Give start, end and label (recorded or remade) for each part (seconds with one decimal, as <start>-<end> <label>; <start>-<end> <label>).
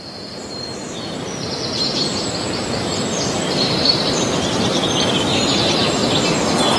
0.0-6.0 remade; 6.0-6.8 recorded